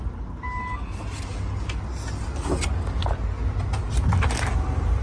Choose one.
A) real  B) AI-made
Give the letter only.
A